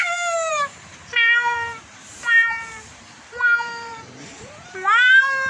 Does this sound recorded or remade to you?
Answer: remade